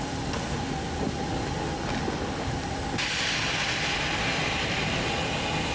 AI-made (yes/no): no